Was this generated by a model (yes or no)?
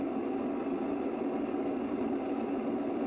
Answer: no